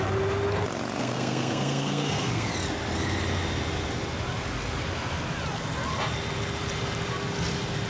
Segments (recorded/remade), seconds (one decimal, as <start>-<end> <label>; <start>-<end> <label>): 0.0-1.0 recorded; 1.0-2.5 remade; 2.5-7.9 recorded